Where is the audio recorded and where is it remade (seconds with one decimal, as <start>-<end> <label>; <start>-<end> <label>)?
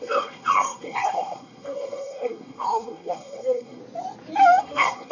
0.0-3.8 remade; 3.8-4.6 recorded; 4.6-5.1 remade